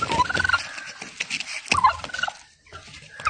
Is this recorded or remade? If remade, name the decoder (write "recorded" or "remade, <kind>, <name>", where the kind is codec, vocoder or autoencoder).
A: recorded